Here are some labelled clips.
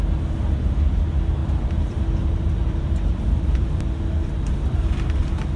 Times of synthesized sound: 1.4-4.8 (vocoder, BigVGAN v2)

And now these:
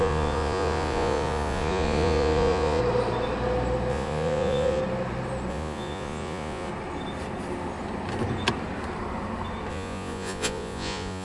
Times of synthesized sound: 0.0-2.8 (vocoder, Vocos); 3.9-4.8; 5.5-6.7; 9.7-11.2

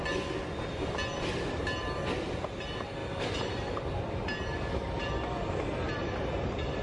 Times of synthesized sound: none

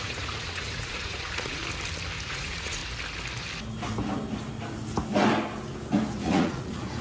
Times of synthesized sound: 0.0-1.6 (vocoder, Vocos); 2.2-2.8; 6.1-7.0

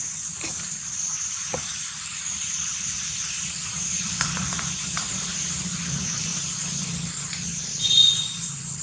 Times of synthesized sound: 0.0-6.3 (vocoder, BigVGAN v2); 7.6-8.8

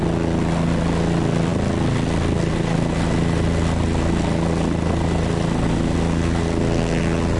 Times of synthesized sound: none